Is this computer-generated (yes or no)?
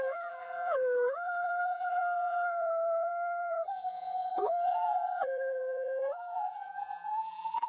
yes